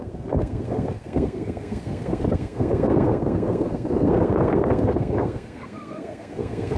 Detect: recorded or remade remade